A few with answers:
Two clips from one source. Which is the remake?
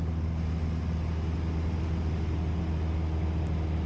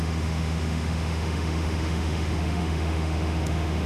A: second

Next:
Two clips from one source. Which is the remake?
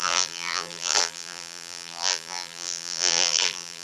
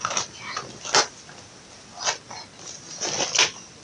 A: first